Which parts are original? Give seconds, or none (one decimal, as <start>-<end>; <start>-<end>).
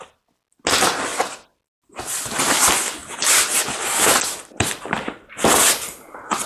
0.0-6.5